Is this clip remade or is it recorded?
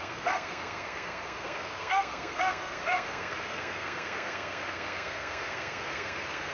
remade